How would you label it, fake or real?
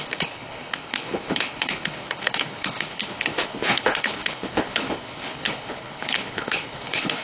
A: fake